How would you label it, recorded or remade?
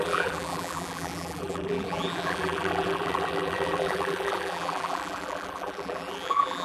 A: remade